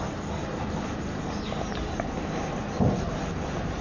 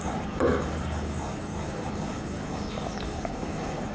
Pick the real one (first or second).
first